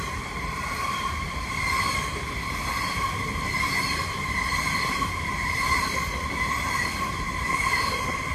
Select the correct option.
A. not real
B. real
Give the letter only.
A